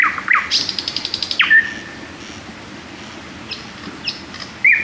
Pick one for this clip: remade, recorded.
recorded